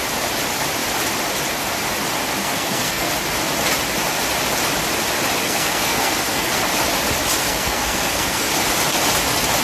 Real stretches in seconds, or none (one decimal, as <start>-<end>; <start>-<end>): 0.0-2.4; 3.1-5.4; 6.7-7.4; 8.5-9.6